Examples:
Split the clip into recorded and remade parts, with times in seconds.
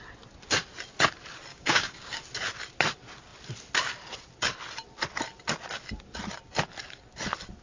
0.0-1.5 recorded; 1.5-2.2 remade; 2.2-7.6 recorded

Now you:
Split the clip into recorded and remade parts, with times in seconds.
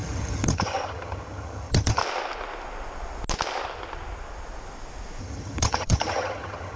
0.0-2.0 remade; 2.0-5.2 recorded; 5.2-6.8 remade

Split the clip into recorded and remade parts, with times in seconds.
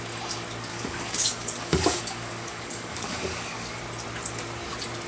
0.0-0.7 recorded; 0.7-3.8 remade; 3.8-5.1 recorded